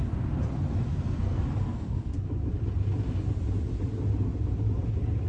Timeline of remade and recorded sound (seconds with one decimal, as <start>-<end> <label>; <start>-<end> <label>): 0.0-0.9 recorded; 0.9-2.1 remade; 2.1-5.3 recorded